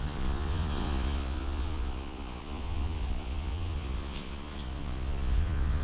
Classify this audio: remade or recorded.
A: remade